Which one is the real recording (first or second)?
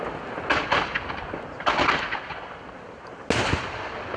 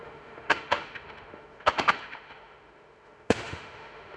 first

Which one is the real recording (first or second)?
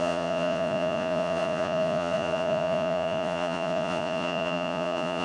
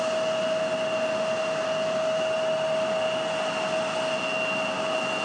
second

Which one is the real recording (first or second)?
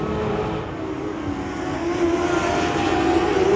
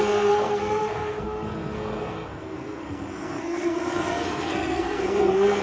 first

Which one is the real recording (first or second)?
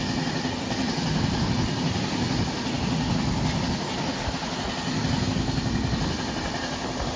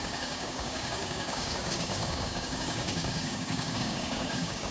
first